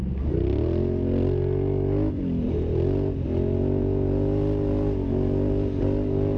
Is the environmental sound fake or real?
real